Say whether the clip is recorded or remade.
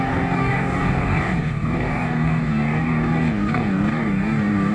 remade